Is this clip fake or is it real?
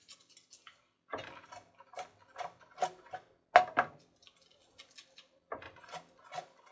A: real